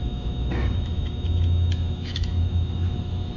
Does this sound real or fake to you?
fake